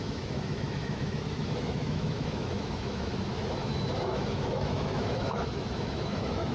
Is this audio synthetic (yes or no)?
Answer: yes